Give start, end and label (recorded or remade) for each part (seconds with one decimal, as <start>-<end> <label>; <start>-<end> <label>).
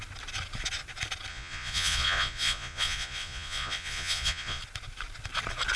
0.0-1.3 recorded; 1.3-4.6 remade; 4.6-5.8 recorded